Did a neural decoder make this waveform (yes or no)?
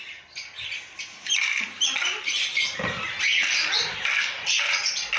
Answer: no